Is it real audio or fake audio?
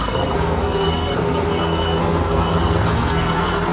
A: fake